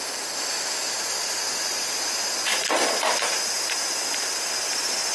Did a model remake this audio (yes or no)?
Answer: no